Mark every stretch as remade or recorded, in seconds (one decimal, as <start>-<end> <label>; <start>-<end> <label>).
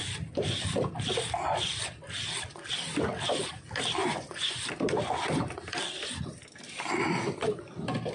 0.0-4.0 recorded; 4.0-4.7 remade; 4.7-8.1 recorded